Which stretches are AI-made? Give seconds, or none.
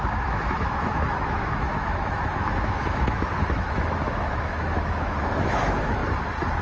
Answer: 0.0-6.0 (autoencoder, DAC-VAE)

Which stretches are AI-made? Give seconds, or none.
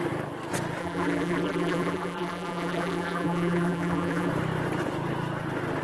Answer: 0.8-4.3 (vocoder, BigVGAN v2)